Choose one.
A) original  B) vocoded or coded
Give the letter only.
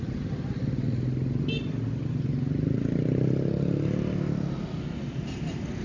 A